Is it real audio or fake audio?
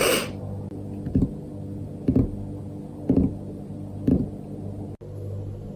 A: real